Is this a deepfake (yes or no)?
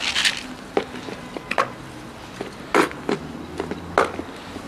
no